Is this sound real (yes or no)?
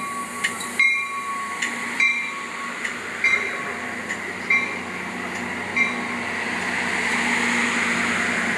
yes